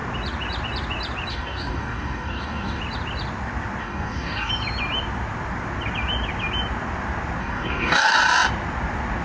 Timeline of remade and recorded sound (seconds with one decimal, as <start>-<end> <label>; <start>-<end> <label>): 0.0-1.3 recorded; 1.3-2.8 remade; 2.8-3.8 recorded; 3.8-4.5 remade; 4.5-7.4 recorded; 7.4-8.2 remade; 8.2-9.2 recorded